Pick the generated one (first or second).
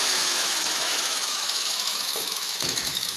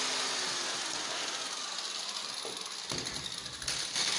first